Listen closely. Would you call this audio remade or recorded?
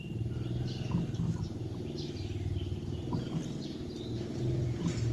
recorded